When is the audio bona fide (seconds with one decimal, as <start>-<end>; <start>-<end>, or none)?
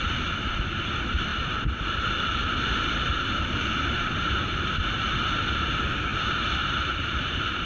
none